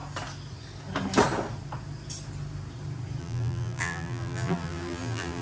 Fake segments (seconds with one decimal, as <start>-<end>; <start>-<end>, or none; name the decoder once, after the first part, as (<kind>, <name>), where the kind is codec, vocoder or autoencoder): 3.2-5.4 (vocoder, BigVGAN v2)